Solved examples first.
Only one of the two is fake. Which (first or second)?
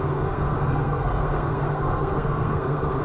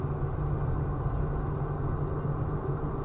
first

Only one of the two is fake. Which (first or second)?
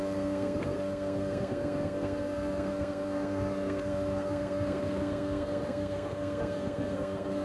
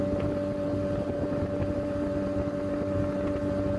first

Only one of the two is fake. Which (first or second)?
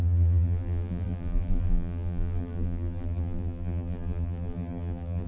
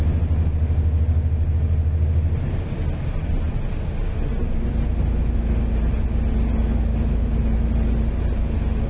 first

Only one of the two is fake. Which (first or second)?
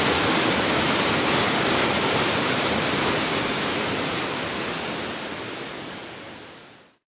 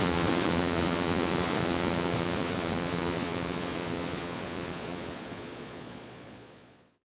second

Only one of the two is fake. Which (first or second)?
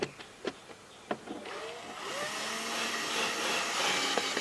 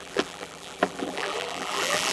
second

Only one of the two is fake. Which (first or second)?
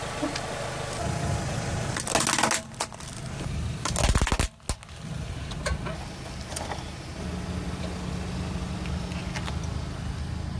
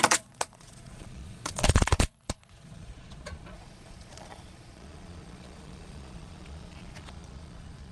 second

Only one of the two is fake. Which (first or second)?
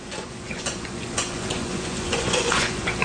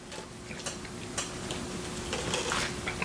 first